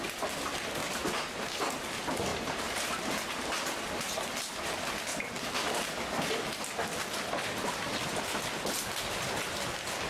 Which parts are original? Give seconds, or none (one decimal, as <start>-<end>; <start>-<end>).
0.0-0.8; 1.4-2.3; 3.5-10.1